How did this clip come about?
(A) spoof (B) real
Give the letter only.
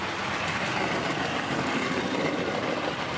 A